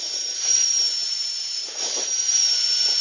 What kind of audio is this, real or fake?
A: fake